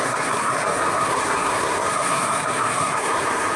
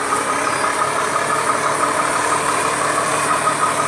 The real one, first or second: second